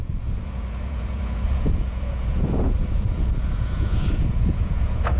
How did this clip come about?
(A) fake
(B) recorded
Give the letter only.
A